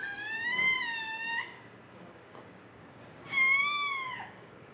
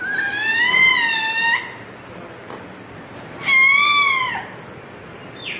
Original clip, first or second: second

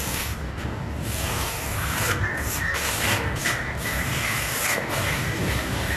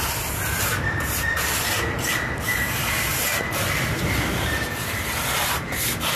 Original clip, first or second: second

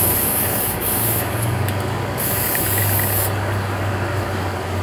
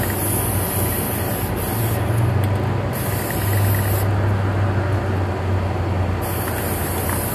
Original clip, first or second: second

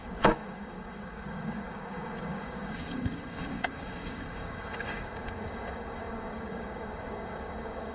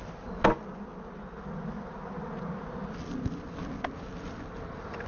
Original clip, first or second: second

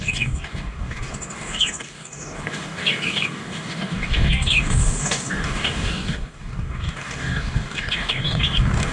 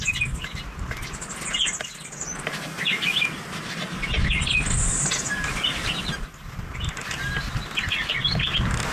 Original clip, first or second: second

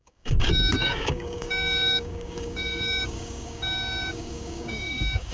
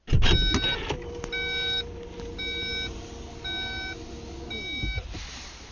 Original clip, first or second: second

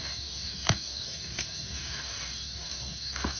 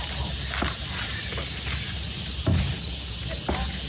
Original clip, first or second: second